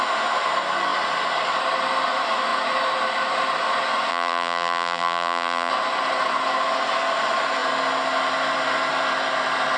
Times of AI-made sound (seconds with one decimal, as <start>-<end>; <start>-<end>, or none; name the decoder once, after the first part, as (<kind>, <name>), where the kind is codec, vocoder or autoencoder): 4.1-5.7 (vocoder, BigVGAN v2)